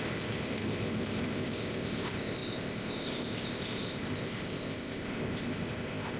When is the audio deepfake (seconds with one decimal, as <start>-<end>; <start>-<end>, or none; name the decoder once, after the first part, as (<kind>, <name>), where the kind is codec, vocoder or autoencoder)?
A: 0.0-6.2 (codec, ZipCodec)